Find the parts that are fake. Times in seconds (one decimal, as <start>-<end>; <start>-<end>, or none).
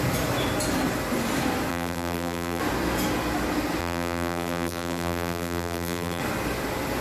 1.7-2.6; 3.8-6.2